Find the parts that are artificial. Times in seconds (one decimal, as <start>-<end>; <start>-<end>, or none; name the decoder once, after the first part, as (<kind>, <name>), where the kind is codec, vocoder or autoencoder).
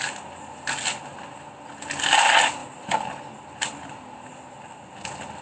none